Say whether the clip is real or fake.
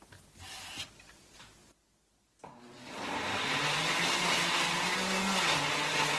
real